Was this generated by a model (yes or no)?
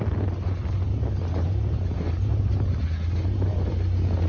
no